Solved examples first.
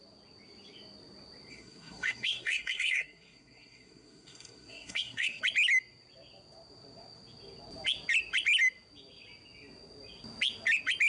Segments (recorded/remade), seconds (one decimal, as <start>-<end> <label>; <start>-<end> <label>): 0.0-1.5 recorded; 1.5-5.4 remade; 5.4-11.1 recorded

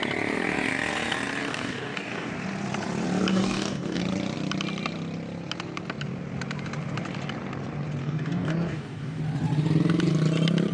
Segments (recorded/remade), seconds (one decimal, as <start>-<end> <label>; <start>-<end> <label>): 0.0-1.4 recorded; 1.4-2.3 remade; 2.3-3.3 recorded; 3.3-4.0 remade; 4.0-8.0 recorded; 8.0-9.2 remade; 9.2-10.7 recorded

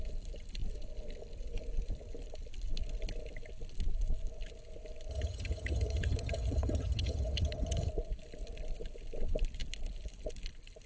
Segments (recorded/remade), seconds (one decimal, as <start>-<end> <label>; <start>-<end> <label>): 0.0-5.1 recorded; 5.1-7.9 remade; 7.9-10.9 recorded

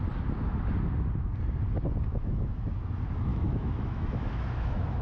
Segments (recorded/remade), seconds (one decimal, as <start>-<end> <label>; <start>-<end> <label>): 0.0-2.1 recorded; 2.1-2.7 remade; 2.7-3.3 recorded; 3.3-5.0 remade

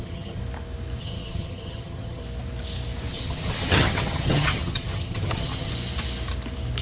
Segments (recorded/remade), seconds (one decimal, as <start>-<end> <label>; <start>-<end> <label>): 0.0-0.4 remade; 0.4-1.0 recorded; 1.0-2.2 remade; 2.2-3.1 recorded; 3.1-5.7 remade; 5.7-6.8 recorded

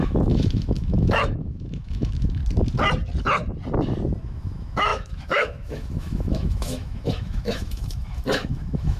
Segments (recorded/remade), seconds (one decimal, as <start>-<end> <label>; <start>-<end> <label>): 0.0-2.4 remade; 2.4-4.2 recorded; 4.2-9.0 remade